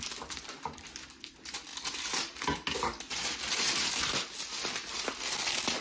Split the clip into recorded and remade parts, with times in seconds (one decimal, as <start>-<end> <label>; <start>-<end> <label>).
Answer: 0.0-5.8 recorded